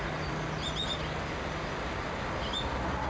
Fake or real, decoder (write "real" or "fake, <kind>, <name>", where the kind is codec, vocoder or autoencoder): real